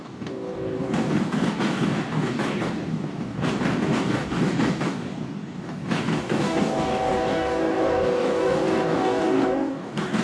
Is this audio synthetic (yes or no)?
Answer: yes